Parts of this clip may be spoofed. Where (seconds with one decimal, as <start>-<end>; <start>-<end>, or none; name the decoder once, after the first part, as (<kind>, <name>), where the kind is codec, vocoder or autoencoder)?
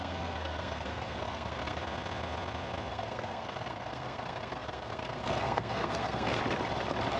0.0-1.8 (codec, SNAC); 2.9-6.4